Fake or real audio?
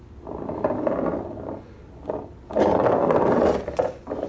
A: real